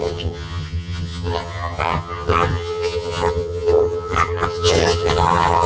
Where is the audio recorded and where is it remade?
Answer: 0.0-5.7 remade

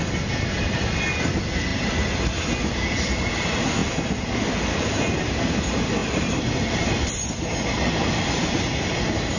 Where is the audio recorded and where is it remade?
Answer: 0.0-1.7 recorded; 1.7-3.3 remade; 3.3-3.8 recorded; 3.8-4.3 remade; 4.3-6.0 recorded; 6.0-9.4 remade

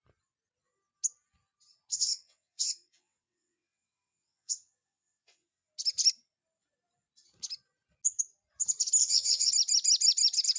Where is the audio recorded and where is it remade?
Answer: 0.0-1.9 recorded; 1.9-5.7 remade; 5.7-9.0 recorded; 9.0-9.5 remade; 9.5-10.6 recorded